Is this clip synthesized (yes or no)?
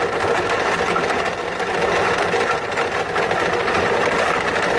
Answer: no